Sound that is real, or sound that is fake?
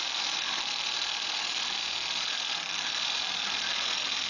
real